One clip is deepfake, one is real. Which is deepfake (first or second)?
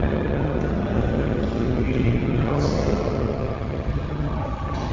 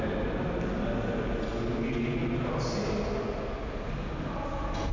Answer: first